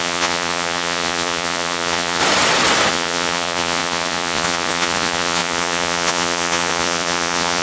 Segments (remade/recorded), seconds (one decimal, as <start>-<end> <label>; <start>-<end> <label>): 0.0-2.2 remade; 2.2-2.9 recorded; 2.9-7.6 remade